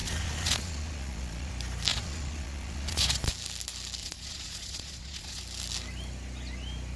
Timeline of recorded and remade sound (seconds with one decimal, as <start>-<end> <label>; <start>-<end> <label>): 0.0-1.5 remade; 1.5-1.9 recorded; 1.9-3.3 remade; 3.3-4.0 recorded; 4.0-5.4 remade; 5.4-7.0 recorded